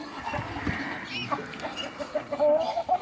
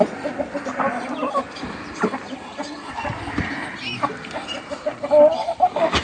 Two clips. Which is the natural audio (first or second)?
first